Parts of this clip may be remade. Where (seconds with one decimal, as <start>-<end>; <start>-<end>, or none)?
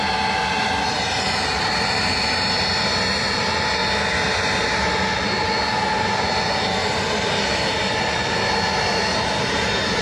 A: 6.8-8.2; 9.1-10.0